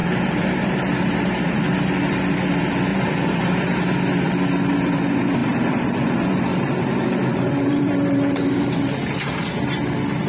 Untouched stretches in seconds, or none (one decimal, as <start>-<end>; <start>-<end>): 2.2-2.9; 3.6-5.4; 9.5-10.3